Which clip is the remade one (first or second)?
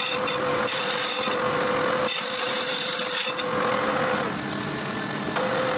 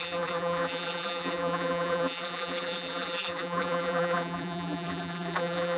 second